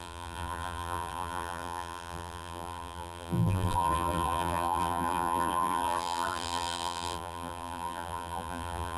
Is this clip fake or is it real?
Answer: fake